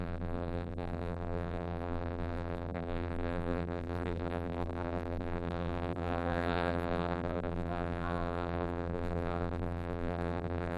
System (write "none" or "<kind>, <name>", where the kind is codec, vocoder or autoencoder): vocoder, BigVGAN v2